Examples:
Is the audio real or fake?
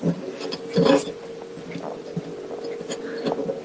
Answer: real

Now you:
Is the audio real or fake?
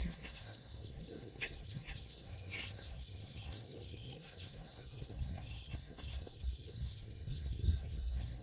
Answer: fake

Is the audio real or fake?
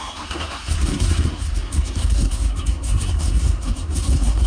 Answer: fake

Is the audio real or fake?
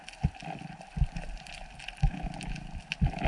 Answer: real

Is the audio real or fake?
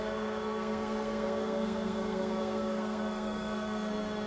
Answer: fake